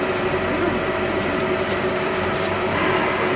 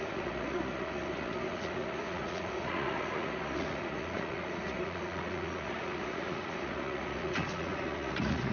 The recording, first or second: first